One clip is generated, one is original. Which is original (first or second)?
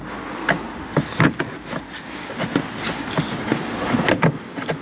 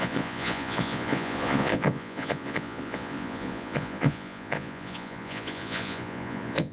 first